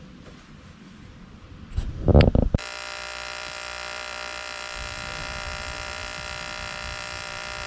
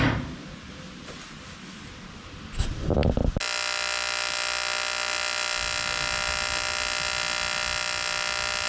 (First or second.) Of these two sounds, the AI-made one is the first